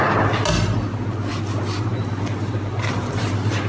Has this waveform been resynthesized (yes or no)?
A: no